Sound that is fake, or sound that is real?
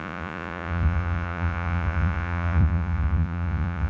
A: fake